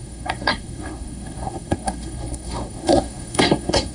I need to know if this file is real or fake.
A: fake